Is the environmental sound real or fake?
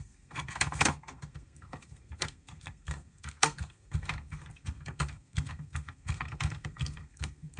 fake